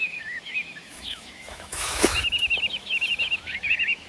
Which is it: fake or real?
fake